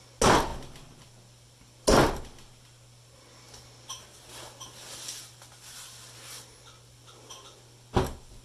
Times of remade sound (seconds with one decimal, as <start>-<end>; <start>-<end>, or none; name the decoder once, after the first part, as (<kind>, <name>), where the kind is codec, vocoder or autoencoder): none